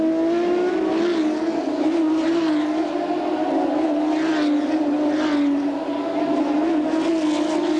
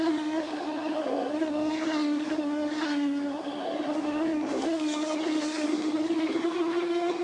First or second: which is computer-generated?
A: second